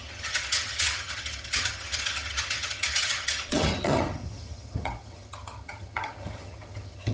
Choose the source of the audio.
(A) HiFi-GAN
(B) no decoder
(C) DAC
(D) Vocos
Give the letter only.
A